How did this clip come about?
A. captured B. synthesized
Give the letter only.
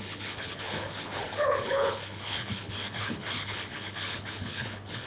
B